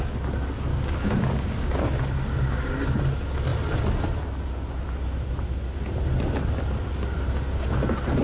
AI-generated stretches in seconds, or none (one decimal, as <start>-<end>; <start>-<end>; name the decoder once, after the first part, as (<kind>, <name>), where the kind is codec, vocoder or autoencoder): 0.7-3.0 (codec, DAC)